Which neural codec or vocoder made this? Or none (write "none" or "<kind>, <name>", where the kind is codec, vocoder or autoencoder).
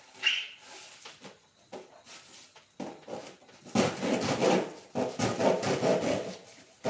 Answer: none